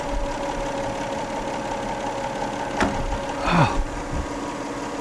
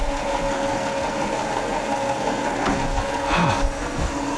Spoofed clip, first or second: second